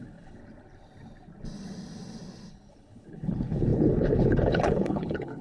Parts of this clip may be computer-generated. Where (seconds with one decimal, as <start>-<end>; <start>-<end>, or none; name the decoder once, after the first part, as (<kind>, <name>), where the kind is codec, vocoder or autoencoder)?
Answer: 0.0-0.4 (codec, HILCodec); 2.7-5.4